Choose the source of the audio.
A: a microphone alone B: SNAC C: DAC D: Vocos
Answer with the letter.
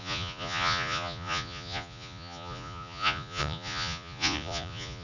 D